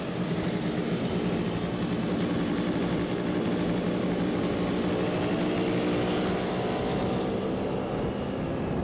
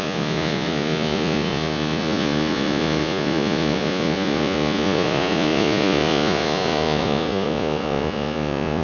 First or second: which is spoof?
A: second